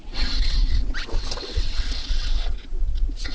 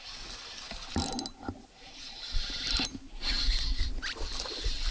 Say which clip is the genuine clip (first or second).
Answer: second